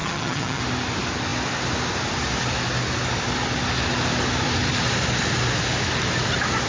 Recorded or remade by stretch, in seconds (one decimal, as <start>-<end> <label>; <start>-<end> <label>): 0.0-0.6 remade; 0.6-6.7 recorded

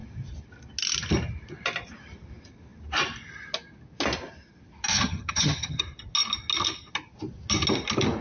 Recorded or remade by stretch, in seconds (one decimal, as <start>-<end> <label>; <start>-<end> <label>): 0.0-4.9 recorded; 4.9-5.8 remade; 5.8-8.2 recorded

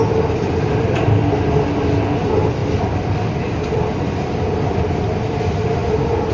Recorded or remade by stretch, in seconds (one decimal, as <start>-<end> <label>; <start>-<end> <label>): 0.0-6.3 recorded

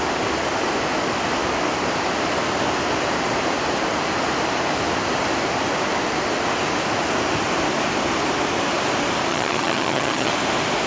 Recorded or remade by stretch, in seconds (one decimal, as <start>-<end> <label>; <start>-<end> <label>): 0.0-9.3 recorded; 9.3-10.3 remade; 10.3-10.9 recorded

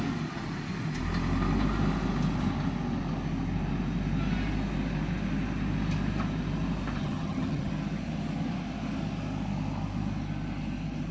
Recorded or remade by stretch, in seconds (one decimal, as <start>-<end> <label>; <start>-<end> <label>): 0.0-7.0 recorded; 7.0-7.7 remade; 7.7-11.1 recorded

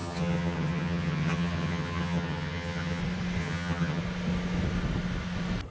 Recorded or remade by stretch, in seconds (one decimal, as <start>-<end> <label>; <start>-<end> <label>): 0.0-3.0 remade; 3.0-3.4 recorded; 3.4-4.0 remade; 4.0-5.7 recorded

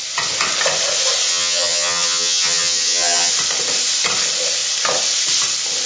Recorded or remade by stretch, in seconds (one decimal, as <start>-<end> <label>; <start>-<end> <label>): 0.0-1.3 recorded; 1.3-3.3 remade; 3.3-5.9 recorded

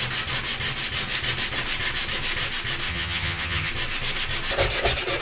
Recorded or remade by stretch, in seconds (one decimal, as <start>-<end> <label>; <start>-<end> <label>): 0.0-2.9 recorded; 2.9-3.7 remade; 3.7-5.2 recorded